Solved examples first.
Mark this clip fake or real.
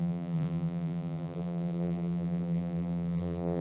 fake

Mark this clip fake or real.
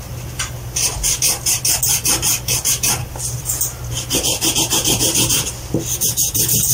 real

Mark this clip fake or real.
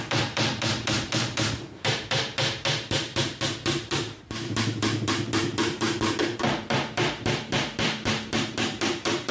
fake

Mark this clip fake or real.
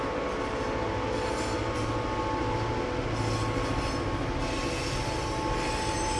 real